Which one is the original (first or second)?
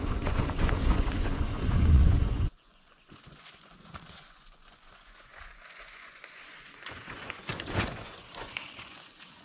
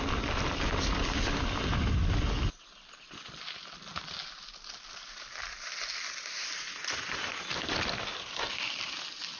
second